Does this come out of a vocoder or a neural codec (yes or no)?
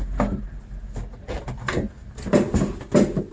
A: no